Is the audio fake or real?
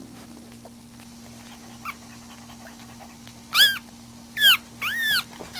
real